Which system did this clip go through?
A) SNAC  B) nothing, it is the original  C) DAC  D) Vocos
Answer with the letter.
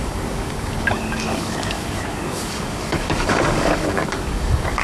C